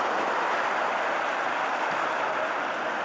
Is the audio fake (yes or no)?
no